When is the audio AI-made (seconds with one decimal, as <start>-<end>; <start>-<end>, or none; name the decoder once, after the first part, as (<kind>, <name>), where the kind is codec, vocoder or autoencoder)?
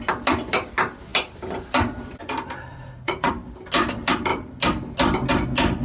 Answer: 2.7-3.3 (vocoder, Vocos)